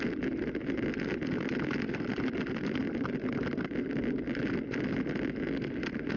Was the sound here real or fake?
real